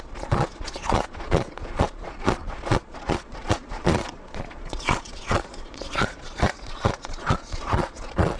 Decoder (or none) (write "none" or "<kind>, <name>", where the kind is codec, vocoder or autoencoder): vocoder, Vocos